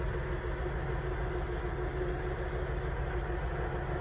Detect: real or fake real